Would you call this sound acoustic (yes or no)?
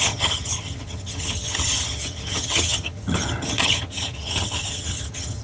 no